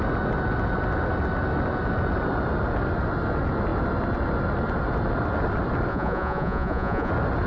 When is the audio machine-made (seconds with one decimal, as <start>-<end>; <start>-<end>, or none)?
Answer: 5.9-7.1